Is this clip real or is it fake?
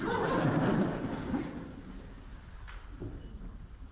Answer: fake